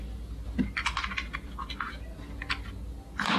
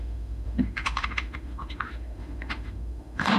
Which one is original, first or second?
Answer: first